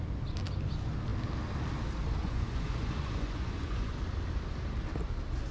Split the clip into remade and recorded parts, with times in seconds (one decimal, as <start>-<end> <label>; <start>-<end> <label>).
0.0-2.2 recorded; 2.2-4.0 remade; 4.0-5.5 recorded